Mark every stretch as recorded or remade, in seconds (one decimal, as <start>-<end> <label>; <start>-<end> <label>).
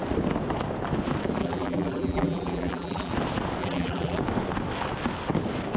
0.0-1.4 recorded; 1.4-3.1 remade; 3.1-3.6 recorded; 3.6-4.2 remade; 4.2-5.8 recorded